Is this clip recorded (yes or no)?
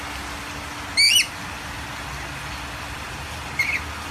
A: yes